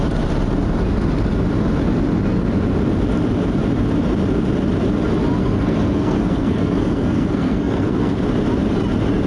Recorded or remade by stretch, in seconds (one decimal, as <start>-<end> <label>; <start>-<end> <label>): 0.0-5.4 recorded; 5.4-8.2 remade; 8.2-9.3 recorded

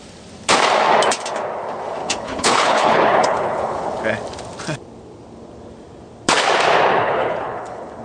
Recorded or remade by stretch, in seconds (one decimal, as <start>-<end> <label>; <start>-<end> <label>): 0.0-2.0 recorded; 2.0-4.0 remade; 4.0-6.9 recorded; 6.9-8.0 remade

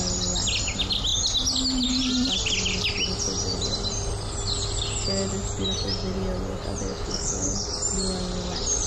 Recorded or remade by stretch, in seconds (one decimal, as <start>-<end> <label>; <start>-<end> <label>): 0.0-6.9 recorded; 6.9-7.7 remade; 7.7-8.9 recorded

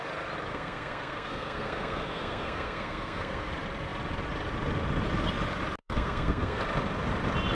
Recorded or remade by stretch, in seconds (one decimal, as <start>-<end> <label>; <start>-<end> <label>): 0.0-0.5 recorded; 0.5-3.5 remade; 3.5-5.8 recorded; 5.8-6.6 remade; 6.6-7.5 recorded